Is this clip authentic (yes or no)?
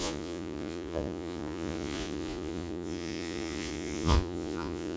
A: no